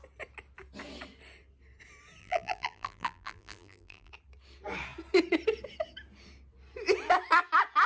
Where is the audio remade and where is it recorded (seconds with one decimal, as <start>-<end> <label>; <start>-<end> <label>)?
0.0-2.2 recorded; 2.2-4.1 remade; 4.1-7.9 recorded